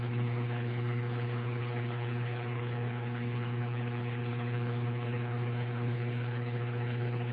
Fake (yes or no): yes